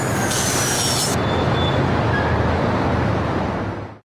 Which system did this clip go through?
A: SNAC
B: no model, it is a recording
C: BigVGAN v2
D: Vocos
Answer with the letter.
B